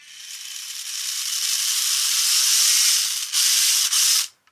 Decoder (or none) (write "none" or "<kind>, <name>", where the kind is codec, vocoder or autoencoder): none